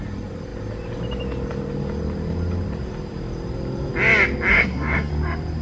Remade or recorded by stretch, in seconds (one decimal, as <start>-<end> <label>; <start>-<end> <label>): 0.0-4.5 recorded; 4.5-5.1 remade; 5.1-5.6 recorded